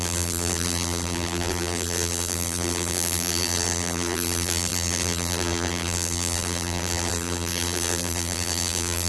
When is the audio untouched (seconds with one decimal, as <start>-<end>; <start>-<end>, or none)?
none